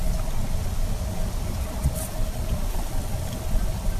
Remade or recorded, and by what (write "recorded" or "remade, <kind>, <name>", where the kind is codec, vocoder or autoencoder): recorded